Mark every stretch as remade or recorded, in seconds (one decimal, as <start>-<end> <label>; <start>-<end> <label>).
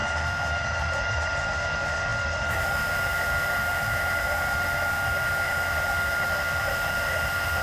0.0-7.6 remade